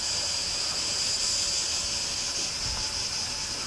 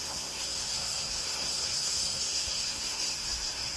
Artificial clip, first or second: second